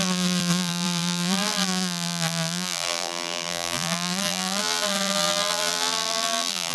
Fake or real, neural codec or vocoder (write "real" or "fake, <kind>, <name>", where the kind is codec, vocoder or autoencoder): fake, vocoder, BigVGAN v2